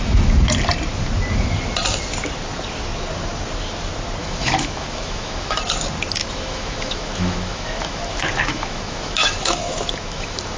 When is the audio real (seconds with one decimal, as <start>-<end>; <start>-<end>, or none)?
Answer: 0.0-4.2; 5.6-6.2